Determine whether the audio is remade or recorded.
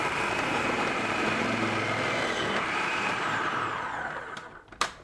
remade